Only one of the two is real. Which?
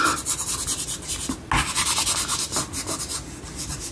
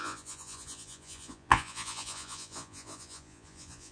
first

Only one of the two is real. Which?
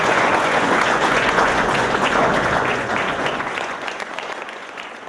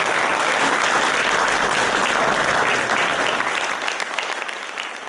second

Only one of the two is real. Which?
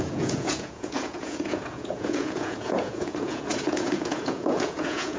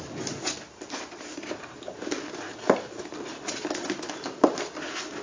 second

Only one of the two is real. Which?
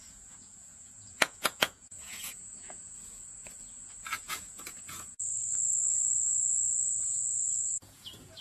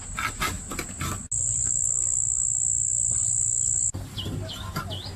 second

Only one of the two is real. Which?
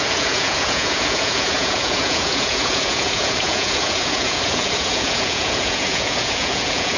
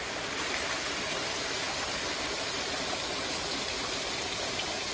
second